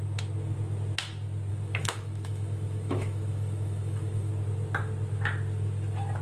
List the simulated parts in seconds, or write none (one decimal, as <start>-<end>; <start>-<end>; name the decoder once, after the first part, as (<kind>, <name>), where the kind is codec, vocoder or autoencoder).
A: 1.5-4.3 (autoencoder, DAC-VAE)